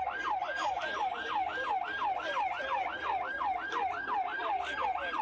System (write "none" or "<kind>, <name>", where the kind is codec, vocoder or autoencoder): none